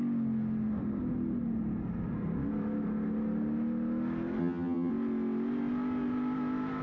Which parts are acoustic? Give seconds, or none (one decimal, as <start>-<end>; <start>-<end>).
0.0-4.4; 4.9-6.8